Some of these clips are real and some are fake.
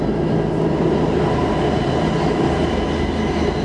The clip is real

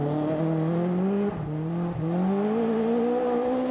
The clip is real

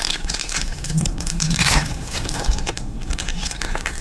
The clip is fake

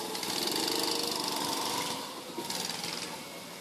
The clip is real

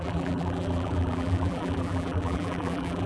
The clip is fake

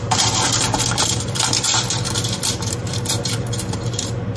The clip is fake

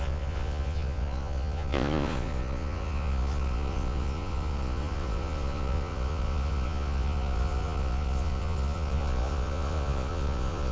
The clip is fake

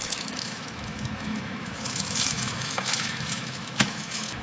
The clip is fake